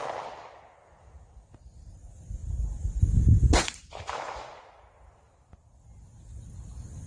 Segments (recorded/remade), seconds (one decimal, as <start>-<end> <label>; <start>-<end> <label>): 0.0-2.4 recorded; 2.4-3.0 remade; 3.0-3.6 recorded; 3.6-5.6 remade; 5.6-7.1 recorded